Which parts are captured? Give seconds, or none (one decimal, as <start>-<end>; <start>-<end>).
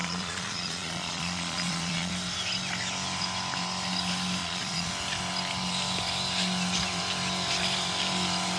2.1-4.4; 4.9-8.6